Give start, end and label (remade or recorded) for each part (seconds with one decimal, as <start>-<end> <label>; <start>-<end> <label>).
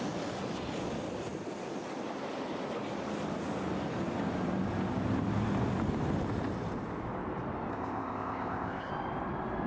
0.0-7.7 recorded; 7.7-8.9 remade; 8.9-9.7 recorded